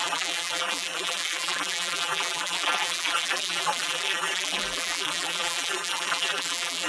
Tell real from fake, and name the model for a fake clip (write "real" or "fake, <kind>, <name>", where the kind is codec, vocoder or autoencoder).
fake, vocoder, BigVGAN v2